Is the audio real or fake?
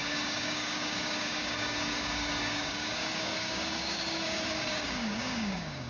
fake